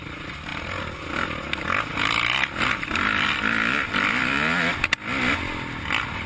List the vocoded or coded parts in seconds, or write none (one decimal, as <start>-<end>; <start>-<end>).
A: none